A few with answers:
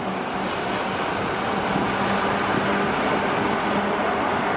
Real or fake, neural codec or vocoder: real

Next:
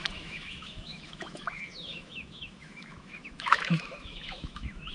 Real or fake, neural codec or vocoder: fake, autoencoder, DAC-VAE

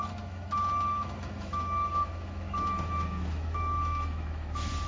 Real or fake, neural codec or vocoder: fake, autoencoder, DAC-VAE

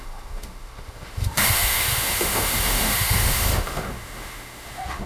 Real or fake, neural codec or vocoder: fake, autoencoder, DAC-VAE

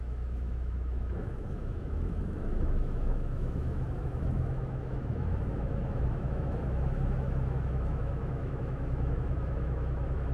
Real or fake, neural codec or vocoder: fake, autoencoder, DAC-VAE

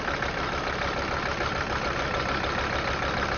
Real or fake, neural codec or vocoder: real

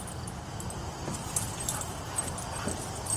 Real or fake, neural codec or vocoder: real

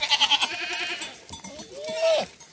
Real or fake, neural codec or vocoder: real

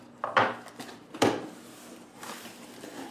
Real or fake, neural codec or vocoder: real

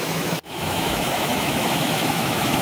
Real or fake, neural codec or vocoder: fake, autoencoder, DAC-VAE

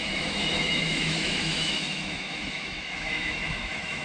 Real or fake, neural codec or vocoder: fake, autoencoder, DAC-VAE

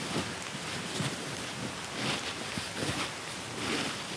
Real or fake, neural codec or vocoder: real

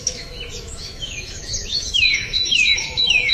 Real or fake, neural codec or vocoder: fake, autoencoder, DAC-VAE